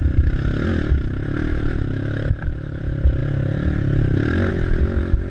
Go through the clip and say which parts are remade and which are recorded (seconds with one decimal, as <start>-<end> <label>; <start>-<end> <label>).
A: 0.0-1.5 recorded; 1.5-2.8 remade; 2.8-4.5 recorded; 4.5-5.3 remade